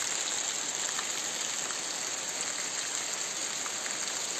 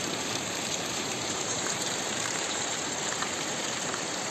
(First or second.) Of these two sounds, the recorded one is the first